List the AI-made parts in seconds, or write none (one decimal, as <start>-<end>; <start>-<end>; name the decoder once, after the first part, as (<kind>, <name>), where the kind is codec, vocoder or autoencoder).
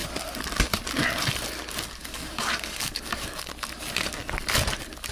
2.0-3.5 (codec, DAC)